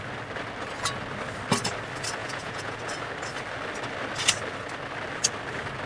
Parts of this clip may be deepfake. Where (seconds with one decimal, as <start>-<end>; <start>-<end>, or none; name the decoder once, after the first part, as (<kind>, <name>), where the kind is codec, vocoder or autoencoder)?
2.2-2.8 (vocoder, Vocos)